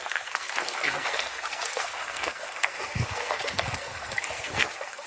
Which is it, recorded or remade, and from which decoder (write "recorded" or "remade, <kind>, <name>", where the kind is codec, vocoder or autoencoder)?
remade, codec, SNAC